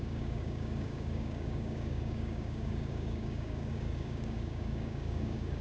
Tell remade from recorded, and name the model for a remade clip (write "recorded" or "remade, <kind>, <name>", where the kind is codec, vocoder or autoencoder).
remade, codec, DAC